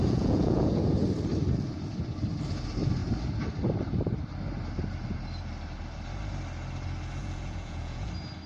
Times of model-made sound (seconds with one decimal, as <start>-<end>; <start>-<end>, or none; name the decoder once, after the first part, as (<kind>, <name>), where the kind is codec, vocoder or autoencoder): 0.0-0.8 (vocoder, Vocos); 7.2-8.1

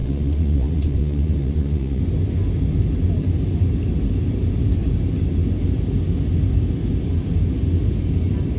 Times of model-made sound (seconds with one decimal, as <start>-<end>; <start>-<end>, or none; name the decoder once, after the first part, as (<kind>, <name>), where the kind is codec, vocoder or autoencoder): 0.0-2.0 (vocoder, Vocos)

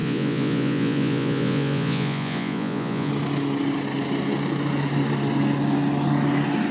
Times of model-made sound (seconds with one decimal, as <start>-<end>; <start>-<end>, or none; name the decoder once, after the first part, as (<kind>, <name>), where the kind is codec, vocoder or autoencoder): 0.0-3.1 (vocoder, Vocos)

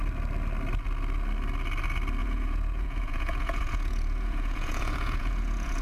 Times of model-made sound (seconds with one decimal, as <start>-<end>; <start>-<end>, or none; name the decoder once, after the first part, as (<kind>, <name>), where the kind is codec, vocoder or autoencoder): 2.2-5.8 (vocoder, Vocos)

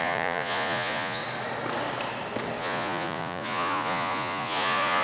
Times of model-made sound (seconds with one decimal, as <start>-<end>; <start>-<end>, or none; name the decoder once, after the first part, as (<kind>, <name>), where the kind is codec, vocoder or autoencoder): 0.0-1.2 (vocoder, Vocos); 2.6-5.0

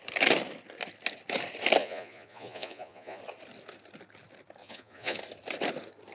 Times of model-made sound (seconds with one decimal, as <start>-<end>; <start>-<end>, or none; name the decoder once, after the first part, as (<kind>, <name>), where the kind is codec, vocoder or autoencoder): 1.8-3.2 (vocoder, Vocos); 4.6-5.2